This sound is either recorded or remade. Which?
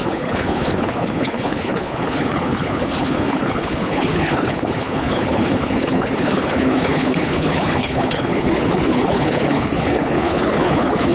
remade